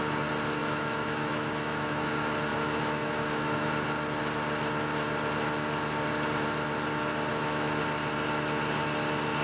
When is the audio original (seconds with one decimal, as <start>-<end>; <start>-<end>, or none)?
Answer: 0.0-0.6; 2.1-2.5; 3.7-7.3; 7.8-9.4